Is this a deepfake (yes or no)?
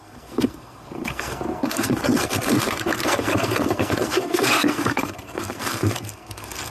yes